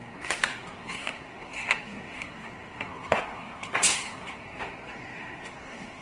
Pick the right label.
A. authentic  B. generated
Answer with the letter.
B